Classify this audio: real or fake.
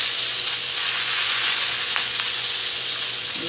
fake